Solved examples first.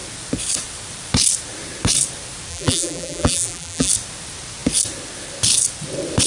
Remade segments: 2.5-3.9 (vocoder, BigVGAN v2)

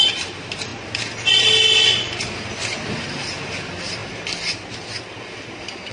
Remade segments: 0.0-5.9 (vocoder, BigVGAN v2)